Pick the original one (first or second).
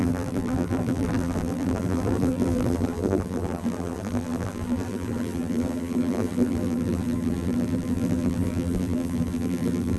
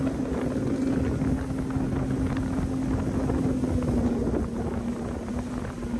second